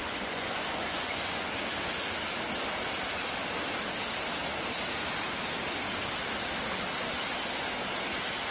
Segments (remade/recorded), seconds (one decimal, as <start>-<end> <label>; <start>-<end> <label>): 0.0-1.5 remade; 1.5-8.5 recorded